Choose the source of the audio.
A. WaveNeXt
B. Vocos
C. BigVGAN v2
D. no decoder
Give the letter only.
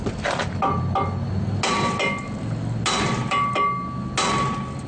D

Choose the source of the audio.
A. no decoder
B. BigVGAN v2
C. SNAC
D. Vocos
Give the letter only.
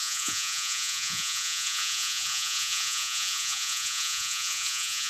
D